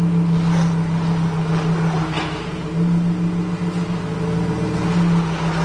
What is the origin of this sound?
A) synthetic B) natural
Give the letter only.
B